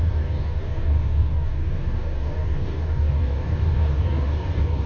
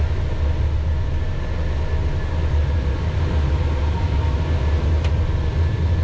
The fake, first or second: first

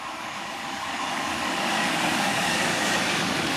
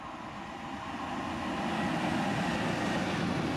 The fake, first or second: first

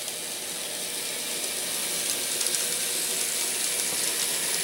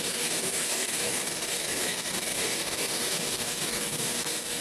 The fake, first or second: second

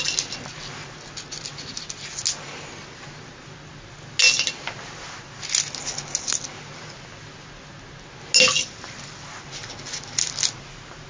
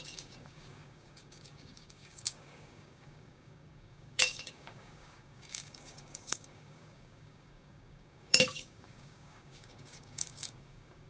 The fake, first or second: second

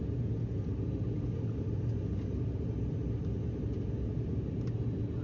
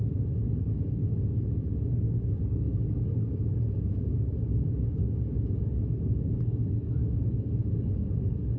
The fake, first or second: second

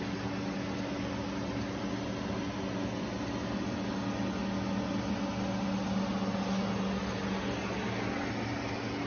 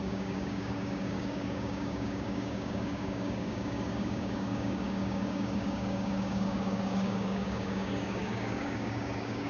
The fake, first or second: second